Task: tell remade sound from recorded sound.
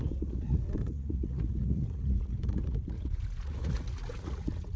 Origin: remade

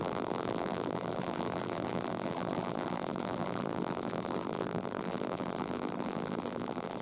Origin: remade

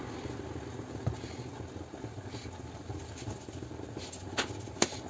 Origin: recorded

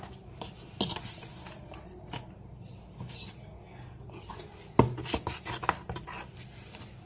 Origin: recorded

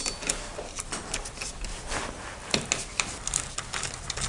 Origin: recorded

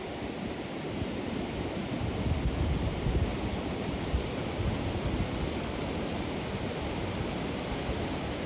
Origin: recorded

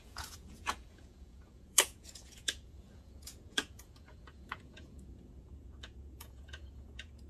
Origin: remade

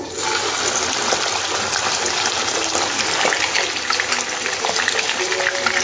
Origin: recorded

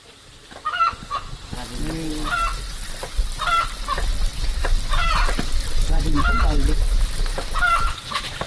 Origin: recorded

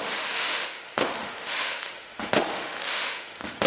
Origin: remade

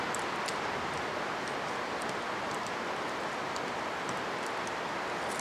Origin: recorded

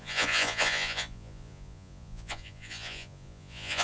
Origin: remade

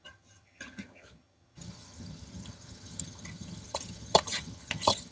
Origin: remade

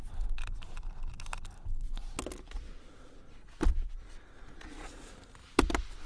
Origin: recorded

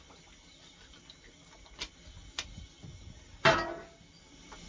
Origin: recorded